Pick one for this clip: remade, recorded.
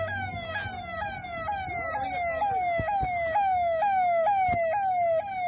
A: recorded